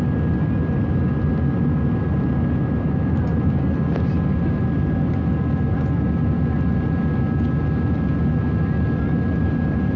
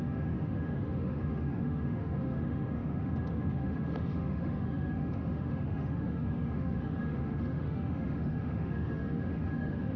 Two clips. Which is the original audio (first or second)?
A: first